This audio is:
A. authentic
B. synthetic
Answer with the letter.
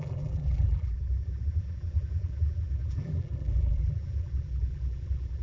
B